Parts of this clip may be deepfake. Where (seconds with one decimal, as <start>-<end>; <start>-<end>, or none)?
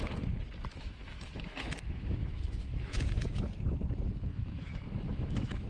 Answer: 0.7-3.5; 4.3-5.7